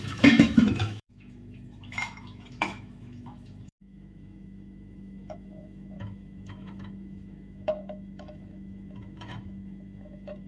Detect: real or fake fake